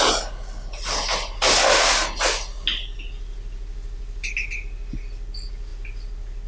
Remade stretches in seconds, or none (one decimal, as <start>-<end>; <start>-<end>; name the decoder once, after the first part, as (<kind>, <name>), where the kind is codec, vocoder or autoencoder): none